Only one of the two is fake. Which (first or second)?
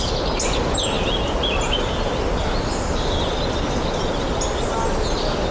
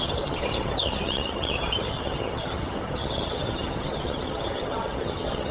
second